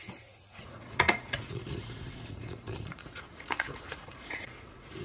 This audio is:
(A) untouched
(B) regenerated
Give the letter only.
B